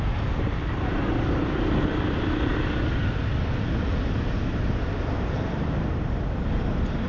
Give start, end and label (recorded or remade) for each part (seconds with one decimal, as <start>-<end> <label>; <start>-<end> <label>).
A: 0.0-7.1 recorded